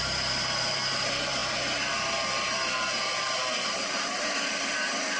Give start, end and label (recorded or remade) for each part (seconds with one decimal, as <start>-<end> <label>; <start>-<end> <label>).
0.0-5.2 remade